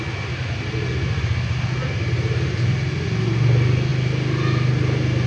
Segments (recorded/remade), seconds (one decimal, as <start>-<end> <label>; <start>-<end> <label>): 0.0-5.3 recorded